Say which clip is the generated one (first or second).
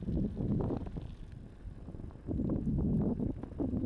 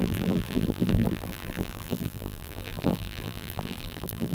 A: second